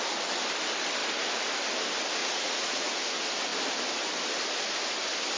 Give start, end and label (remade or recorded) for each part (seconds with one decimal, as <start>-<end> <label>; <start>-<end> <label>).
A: 0.0-2.2 recorded; 2.2-3.0 remade; 3.0-5.4 recorded